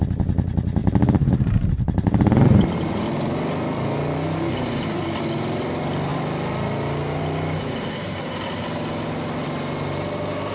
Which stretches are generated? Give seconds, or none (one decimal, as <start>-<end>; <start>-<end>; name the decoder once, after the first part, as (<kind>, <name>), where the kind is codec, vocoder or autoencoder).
0.8-3.0 (vocoder, BigVGAN v2)